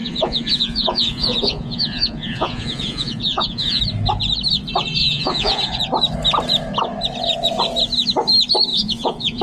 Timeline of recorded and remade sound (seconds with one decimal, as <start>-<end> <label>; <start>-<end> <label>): 0.0-3.8 remade; 3.8-5.0 recorded; 5.0-5.8 remade; 5.8-8.7 recorded; 8.7-9.4 remade